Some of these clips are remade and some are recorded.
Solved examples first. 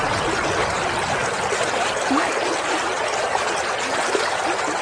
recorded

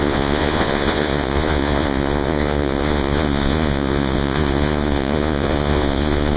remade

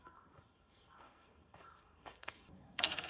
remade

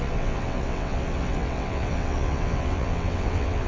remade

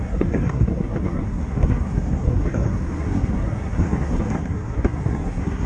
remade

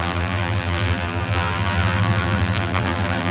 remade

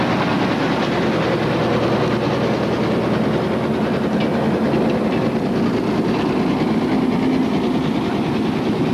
recorded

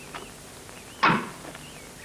recorded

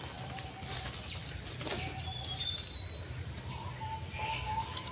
recorded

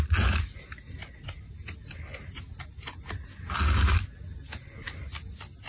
recorded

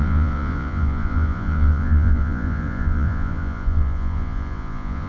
remade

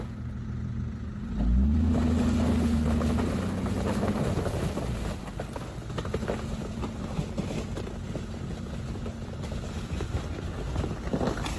recorded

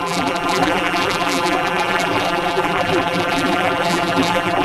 remade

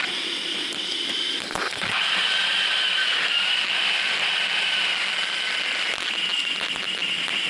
recorded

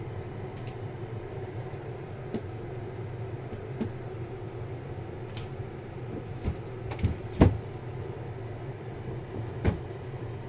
recorded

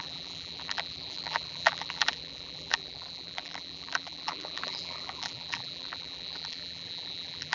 remade